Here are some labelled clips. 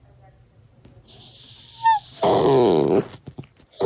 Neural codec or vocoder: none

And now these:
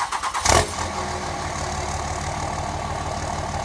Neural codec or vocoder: none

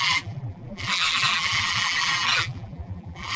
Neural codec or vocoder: vocoder, BigVGAN v2